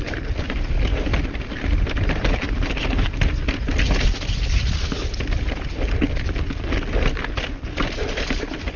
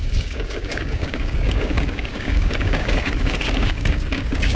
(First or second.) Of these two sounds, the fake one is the second